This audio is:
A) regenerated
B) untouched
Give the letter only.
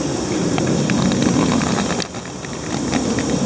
B